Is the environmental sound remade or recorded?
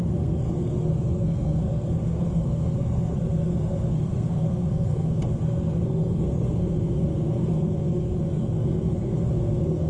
remade